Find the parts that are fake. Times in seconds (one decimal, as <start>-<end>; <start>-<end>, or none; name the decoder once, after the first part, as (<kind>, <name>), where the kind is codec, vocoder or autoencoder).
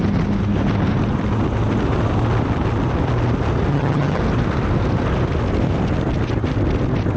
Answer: 3.7-4.2 (vocoder, HiFi-GAN)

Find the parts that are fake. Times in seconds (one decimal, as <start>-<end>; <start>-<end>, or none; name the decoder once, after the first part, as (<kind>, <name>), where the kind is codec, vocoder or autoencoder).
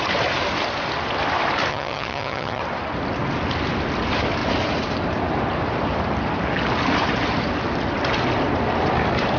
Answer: 1.7-2.6 (vocoder, HiFi-GAN)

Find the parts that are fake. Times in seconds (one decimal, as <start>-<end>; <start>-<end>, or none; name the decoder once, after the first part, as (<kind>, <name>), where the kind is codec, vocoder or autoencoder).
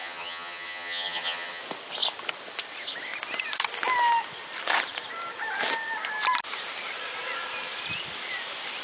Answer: 0.0-1.6 (vocoder, HiFi-GAN)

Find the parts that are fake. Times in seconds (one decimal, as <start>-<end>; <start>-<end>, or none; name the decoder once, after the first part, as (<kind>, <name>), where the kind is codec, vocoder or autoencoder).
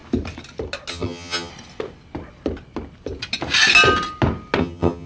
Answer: 0.9-1.5 (vocoder, HiFi-GAN); 4.6-5.1